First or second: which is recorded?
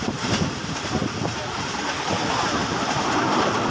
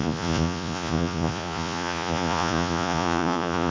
first